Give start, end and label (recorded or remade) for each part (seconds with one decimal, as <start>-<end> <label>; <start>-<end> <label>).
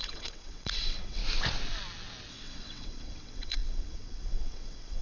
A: 0.0-1.2 remade; 1.2-2.3 recorded; 2.3-5.0 remade